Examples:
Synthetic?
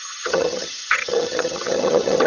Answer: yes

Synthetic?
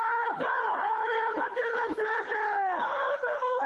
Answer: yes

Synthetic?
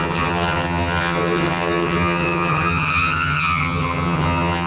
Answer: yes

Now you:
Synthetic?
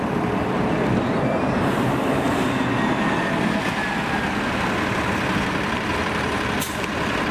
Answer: no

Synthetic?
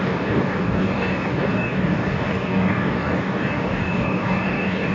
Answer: yes